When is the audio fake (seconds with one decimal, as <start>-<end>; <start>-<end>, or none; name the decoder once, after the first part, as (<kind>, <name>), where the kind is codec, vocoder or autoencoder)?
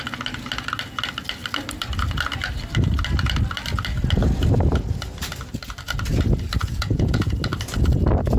6.6-7.4 (vocoder, Vocos)